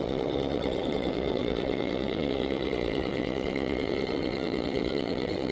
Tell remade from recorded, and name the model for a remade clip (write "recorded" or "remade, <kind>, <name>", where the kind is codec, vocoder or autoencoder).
remade, vocoder, WaveNeXt